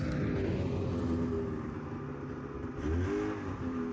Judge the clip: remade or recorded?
recorded